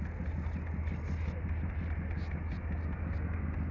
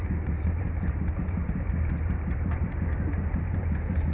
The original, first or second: first